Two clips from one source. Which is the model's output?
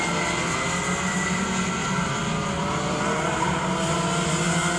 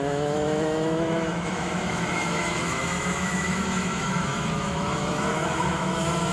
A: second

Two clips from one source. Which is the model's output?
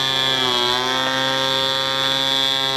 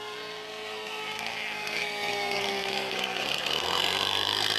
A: second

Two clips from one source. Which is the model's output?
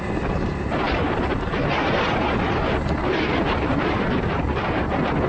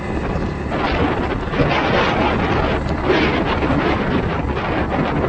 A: first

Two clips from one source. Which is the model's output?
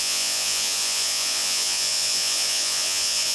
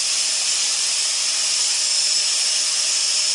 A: first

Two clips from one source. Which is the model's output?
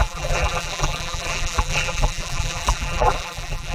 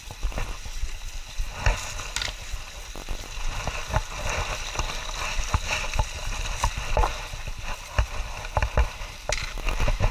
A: first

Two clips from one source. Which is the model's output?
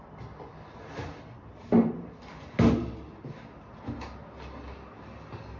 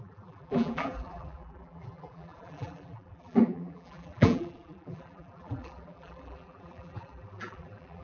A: second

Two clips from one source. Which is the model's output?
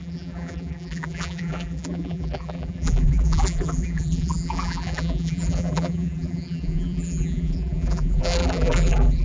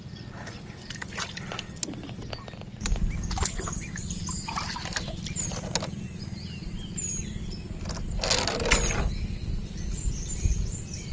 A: first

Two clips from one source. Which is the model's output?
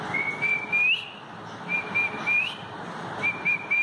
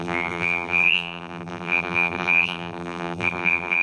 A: second